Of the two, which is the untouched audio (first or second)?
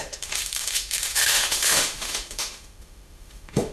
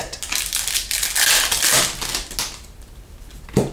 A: second